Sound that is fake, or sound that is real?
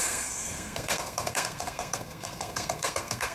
fake